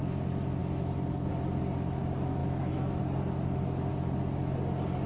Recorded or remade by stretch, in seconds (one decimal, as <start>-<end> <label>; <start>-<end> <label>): 0.0-2.4 recorded; 2.4-3.0 remade; 3.0-5.1 recorded